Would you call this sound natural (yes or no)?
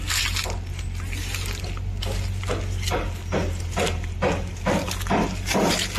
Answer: yes